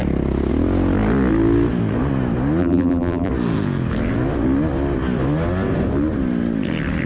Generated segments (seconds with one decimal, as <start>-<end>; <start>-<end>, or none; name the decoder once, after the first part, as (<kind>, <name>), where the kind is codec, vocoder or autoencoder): 2.6-3.3 (vocoder, BigVGAN v2)